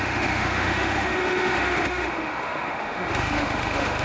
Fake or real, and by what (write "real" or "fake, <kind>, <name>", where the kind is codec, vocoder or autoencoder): fake, autoencoder, DAC-VAE